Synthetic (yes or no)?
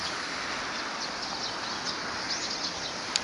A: no